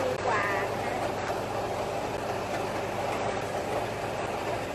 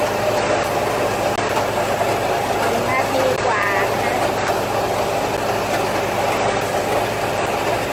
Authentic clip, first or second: second